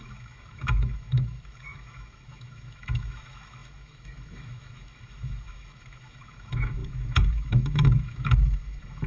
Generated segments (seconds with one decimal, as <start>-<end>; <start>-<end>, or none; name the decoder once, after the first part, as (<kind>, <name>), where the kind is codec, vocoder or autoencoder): 0.0-9.1 (autoencoder, DAC-VAE)